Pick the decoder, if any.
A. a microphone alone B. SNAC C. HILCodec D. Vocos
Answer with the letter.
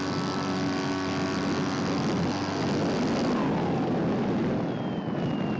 A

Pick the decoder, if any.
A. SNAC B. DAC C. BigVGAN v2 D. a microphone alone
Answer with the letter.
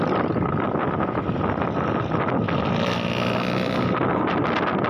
D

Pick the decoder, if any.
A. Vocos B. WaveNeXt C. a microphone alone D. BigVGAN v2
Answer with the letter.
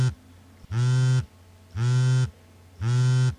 C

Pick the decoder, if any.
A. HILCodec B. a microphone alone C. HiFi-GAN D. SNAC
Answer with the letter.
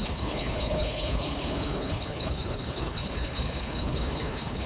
A